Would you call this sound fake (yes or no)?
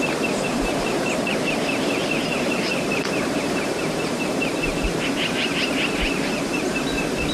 yes